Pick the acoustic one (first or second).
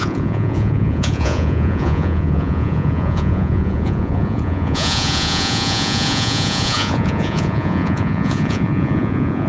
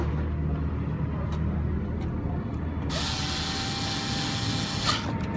second